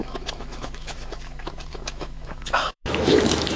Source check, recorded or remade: remade